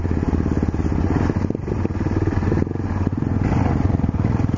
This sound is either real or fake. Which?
real